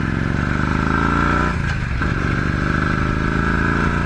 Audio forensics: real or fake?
real